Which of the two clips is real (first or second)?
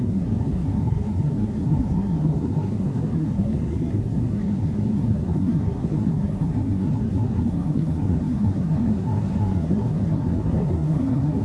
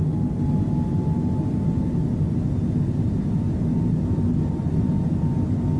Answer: second